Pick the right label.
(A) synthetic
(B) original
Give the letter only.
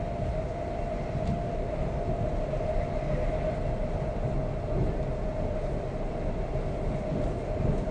B